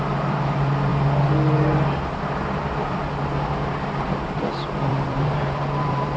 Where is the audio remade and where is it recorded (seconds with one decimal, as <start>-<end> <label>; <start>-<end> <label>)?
0.0-0.9 remade; 0.9-2.6 recorded; 2.6-6.2 remade